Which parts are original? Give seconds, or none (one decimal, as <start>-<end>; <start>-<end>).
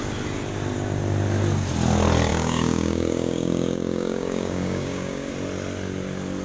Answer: 0.0-2.3; 5.3-6.4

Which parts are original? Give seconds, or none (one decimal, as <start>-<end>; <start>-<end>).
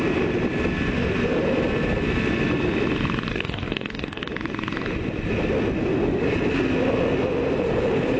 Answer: 0.0-3.3; 4.2-8.2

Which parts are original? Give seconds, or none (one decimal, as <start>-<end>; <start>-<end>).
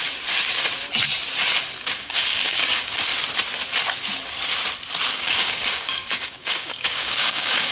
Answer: 0.0-2.0; 3.1-5.1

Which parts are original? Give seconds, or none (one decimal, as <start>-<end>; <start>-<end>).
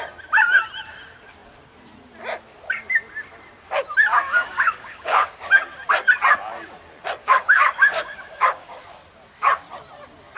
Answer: 0.0-4.1; 5.6-7.2; 8.8-10.4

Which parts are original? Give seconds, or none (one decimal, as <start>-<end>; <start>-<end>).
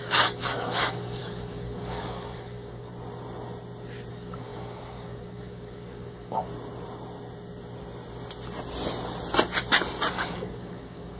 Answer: 2.9-4.1; 6.5-10.1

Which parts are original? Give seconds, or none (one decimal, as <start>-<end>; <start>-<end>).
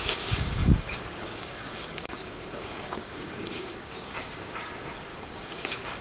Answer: none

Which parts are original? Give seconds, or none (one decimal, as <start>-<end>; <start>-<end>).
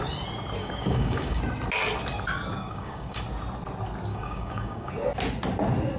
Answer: 0.0-0.6; 1.4-2.6; 3.2-4.1; 4.9-6.0